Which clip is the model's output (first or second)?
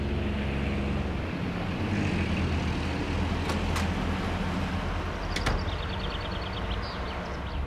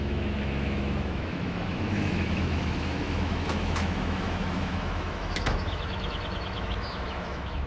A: second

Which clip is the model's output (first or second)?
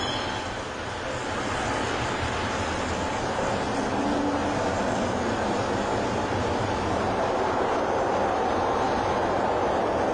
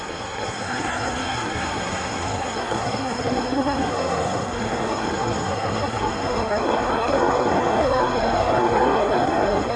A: second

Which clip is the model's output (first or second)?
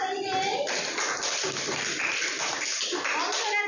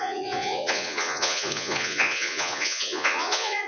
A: second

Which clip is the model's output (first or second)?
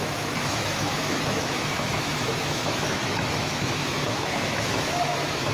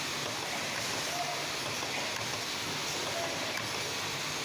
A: first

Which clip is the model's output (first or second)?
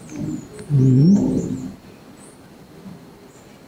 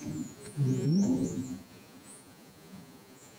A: second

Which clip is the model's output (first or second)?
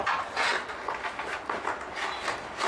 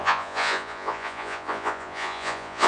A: second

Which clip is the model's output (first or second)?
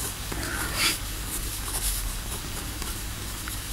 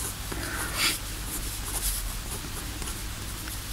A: first